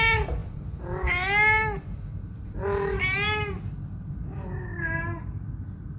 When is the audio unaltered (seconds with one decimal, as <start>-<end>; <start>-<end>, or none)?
0.0-6.0